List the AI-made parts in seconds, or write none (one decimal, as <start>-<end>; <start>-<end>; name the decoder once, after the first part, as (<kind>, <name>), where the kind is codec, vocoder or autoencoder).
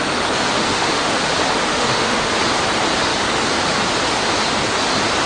0.6-1.2 (autoencoder, DAC-VAE); 1.7-2.3